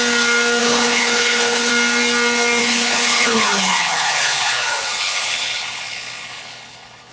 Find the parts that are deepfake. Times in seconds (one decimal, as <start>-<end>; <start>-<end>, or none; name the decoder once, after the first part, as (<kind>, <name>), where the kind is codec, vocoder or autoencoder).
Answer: 0.6-1.7 (codec, HILCodec); 2.6-7.1